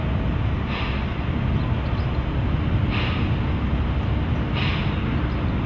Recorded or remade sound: recorded